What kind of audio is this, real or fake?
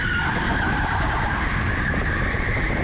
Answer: real